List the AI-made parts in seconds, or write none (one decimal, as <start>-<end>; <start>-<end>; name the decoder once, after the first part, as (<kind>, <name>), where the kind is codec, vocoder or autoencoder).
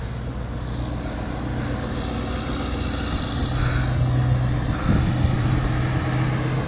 none